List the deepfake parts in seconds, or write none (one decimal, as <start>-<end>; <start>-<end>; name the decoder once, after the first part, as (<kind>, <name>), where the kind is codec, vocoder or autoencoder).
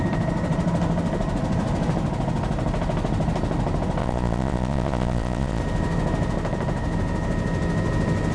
4.0-5.6 (vocoder, Vocos)